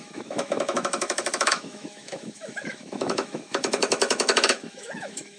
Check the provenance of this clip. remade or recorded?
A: remade